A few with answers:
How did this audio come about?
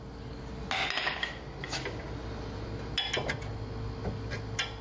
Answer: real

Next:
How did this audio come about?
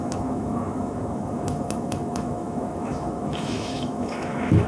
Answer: fake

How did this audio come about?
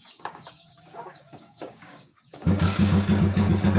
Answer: fake